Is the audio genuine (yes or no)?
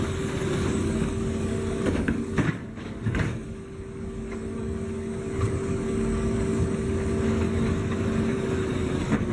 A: no